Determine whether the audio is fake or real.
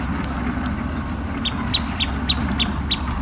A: real